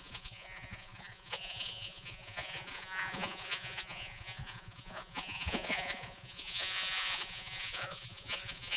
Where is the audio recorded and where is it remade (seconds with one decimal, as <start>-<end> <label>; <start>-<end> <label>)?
0.0-8.8 remade